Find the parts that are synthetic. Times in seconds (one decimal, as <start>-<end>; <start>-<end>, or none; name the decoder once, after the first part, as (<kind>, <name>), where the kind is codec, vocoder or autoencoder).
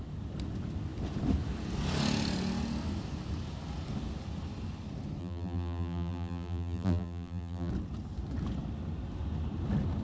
5.2-7.7 (vocoder, BigVGAN v2)